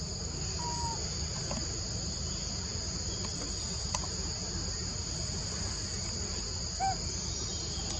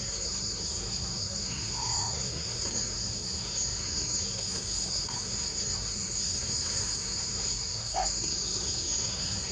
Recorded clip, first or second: first